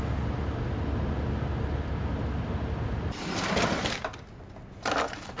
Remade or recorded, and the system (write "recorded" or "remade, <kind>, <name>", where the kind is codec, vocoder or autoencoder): recorded